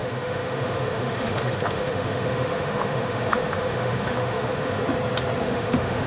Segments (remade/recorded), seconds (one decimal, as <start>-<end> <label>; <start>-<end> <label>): 0.0-4.8 remade; 4.8-5.4 recorded; 5.4-6.1 remade